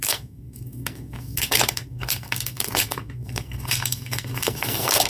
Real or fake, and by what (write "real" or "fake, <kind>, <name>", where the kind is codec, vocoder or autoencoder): fake, codec, SNAC